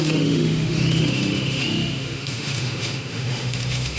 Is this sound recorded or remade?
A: remade